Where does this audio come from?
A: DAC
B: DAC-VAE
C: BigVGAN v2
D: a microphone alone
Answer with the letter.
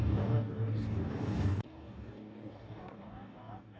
A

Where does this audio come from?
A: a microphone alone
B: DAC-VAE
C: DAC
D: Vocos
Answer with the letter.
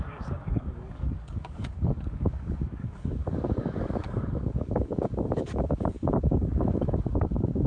C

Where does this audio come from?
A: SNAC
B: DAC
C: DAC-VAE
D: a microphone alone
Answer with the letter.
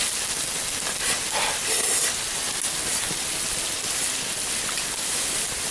D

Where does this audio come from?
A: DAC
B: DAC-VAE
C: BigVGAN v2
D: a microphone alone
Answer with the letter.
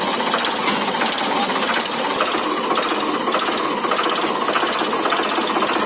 D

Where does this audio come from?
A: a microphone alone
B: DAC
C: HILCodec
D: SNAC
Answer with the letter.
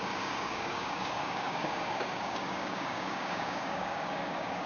B